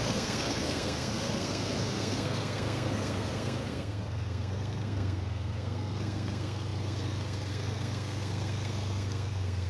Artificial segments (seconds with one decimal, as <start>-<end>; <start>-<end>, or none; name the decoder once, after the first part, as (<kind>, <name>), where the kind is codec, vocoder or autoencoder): 0.0-9.7 (codec, SNAC)

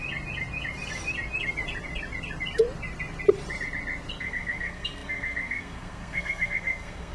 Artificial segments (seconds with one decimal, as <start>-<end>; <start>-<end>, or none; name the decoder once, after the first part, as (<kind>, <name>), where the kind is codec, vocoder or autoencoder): 4.2-7.1 (codec, SNAC)

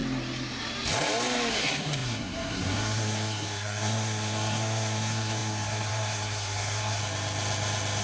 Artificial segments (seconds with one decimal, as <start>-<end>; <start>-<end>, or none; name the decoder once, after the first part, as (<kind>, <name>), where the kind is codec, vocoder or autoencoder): 1.5-7.0 (codec, SNAC)

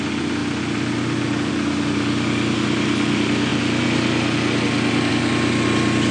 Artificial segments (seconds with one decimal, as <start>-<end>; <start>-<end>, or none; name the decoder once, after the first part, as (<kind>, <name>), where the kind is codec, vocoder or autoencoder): none

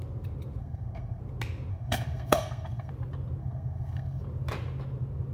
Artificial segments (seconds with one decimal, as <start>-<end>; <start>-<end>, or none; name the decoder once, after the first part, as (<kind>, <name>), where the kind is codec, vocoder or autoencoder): 0.6-1.2 (codec, SNAC); 1.7-2.9; 3.4-4.2

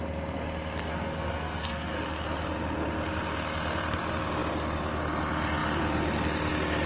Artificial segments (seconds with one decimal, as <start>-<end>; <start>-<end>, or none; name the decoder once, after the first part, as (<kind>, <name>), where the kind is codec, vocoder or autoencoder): 0.9-2.0 (codec, SNAC)